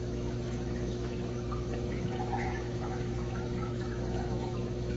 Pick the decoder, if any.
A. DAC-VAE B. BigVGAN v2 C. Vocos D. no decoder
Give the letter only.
A